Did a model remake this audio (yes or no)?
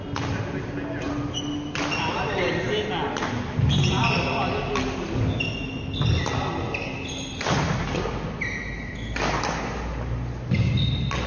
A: no